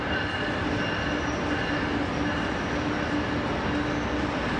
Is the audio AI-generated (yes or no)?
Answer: no